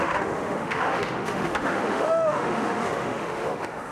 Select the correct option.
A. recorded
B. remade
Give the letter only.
B